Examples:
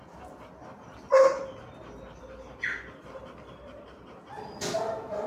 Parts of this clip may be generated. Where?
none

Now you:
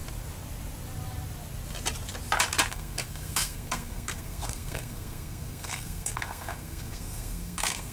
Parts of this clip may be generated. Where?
2.7-7.9 (codec, SNAC)

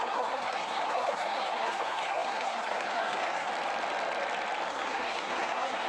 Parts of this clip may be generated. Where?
0.0-3.5 (codec, SNAC); 4.7-5.9